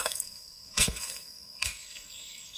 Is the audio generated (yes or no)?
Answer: yes